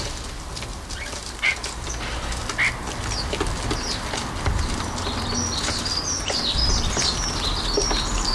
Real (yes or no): yes